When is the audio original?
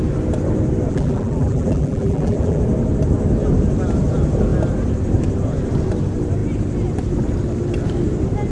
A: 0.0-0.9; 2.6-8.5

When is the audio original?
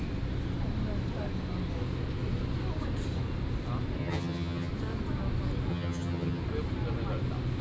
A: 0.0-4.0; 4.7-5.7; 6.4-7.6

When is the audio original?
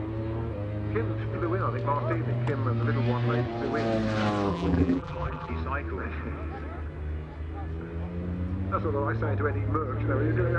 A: 0.0-4.5; 5.5-10.6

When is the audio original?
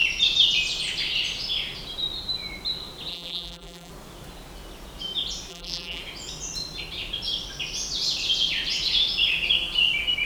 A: 0.0-3.1; 3.9-5.5; 6.0-10.3